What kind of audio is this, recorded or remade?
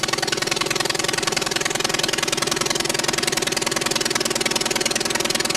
recorded